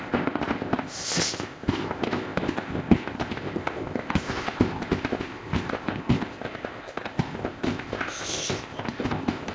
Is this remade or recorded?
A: remade